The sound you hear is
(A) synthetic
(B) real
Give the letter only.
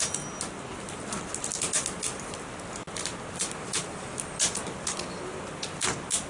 B